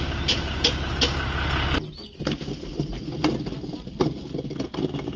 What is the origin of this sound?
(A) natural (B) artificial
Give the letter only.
A